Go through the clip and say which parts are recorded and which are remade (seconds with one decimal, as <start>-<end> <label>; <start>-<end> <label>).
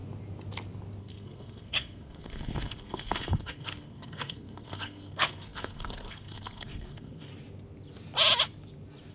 0.0-1.0 recorded; 1.0-7.3 remade; 7.3-9.1 recorded